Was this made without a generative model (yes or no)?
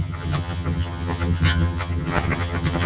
no